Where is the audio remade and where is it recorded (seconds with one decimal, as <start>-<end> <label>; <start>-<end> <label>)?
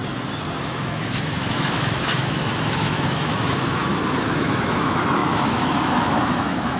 0.0-0.6 recorded; 0.6-6.8 remade